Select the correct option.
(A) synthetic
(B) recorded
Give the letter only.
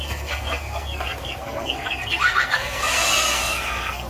A